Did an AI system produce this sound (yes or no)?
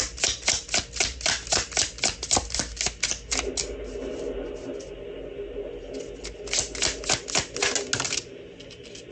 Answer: no